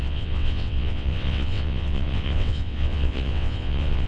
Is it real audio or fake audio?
fake